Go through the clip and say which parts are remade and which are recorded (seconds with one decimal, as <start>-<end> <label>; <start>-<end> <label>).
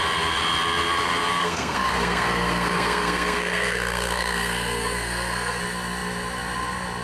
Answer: 0.0-1.4 recorded; 1.4-5.6 remade; 5.6-7.0 recorded